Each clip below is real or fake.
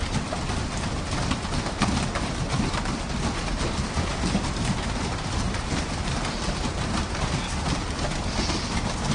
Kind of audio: real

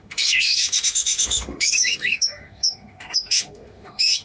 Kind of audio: fake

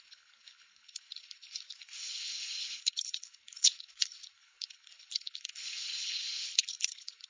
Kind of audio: fake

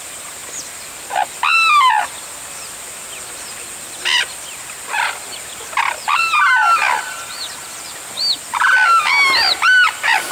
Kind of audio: real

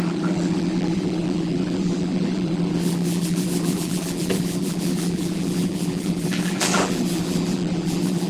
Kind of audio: fake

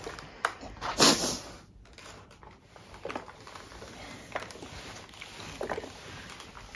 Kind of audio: real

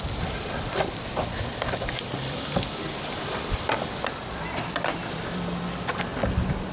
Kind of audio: fake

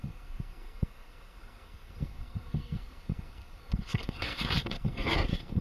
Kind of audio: fake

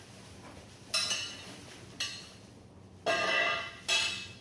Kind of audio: real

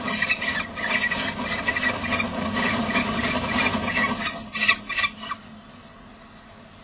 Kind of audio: real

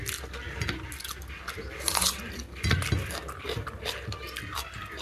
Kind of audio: real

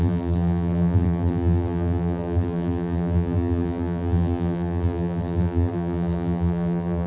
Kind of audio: fake